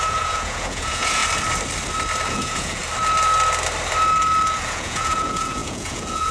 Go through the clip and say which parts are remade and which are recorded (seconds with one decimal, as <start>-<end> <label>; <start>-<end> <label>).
0.0-1.2 remade; 1.2-2.3 recorded; 2.3-2.8 remade; 2.8-4.6 recorded; 4.6-6.3 remade